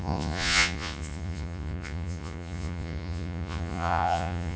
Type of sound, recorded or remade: remade